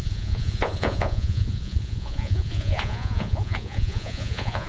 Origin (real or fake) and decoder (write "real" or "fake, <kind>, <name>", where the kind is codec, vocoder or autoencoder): fake, vocoder, Vocos